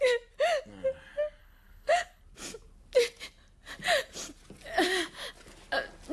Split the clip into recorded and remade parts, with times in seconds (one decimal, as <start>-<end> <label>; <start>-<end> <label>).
0.0-1.4 recorded; 1.4-2.2 remade; 2.2-6.1 recorded